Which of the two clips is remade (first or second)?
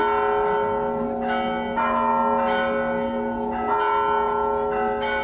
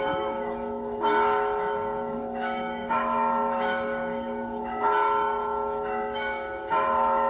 second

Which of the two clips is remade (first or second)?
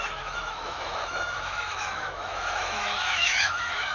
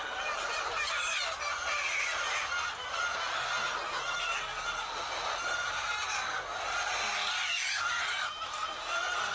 first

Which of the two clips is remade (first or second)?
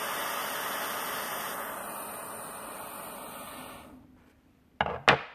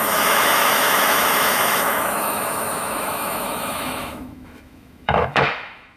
second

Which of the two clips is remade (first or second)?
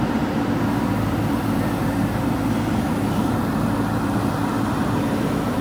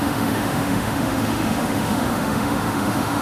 second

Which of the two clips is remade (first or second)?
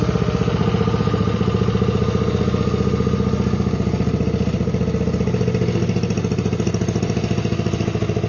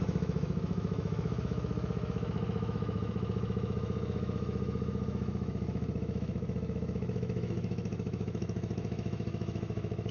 second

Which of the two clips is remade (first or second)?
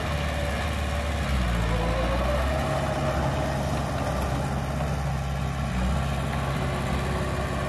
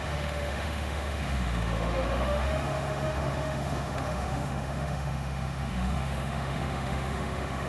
second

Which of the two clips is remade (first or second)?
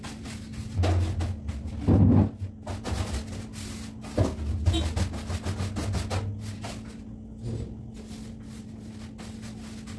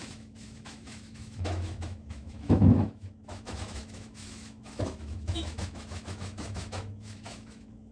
second